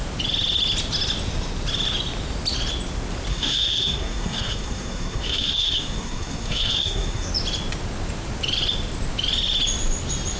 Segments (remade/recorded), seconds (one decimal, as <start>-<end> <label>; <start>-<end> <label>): 0.0-3.3 recorded; 3.3-7.3 remade; 7.3-10.4 recorded

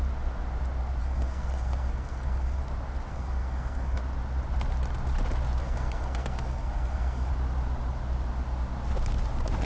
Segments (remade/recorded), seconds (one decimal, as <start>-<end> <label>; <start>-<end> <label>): 0.0-1.0 recorded; 1.0-2.6 remade; 2.6-3.1 recorded; 3.1-4.0 remade; 4.0-5.6 recorded; 5.6-7.3 remade; 7.3-9.6 recorded

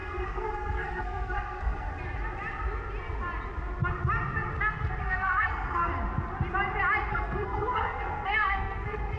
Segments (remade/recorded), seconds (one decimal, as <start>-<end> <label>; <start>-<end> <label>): 0.0-1.9 remade; 1.9-5.0 recorded; 5.0-5.9 remade; 5.9-7.1 recorded; 7.1-9.2 remade

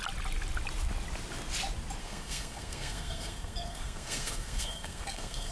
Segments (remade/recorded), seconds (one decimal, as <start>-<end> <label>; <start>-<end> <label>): 0.0-2.0 recorded; 2.0-5.5 remade

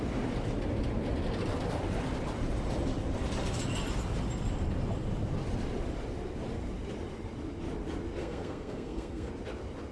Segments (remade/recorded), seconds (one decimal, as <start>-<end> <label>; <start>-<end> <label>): 0.0-8.2 recorded; 8.2-9.3 remade; 9.3-9.9 recorded

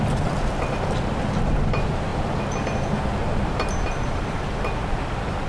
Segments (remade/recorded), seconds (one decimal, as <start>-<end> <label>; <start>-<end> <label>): 0.0-5.5 recorded

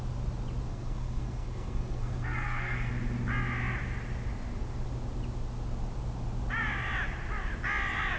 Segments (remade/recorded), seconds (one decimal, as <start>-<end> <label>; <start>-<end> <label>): 0.0-0.7 recorded; 0.7-2.9 remade; 2.9-8.2 recorded

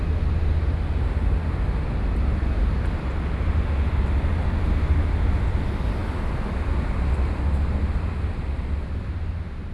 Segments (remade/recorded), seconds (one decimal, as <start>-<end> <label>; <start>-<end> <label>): 0.0-9.7 recorded